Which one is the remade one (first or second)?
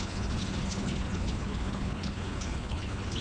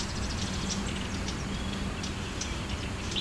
first